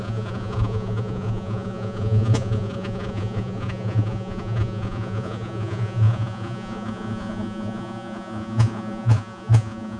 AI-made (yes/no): yes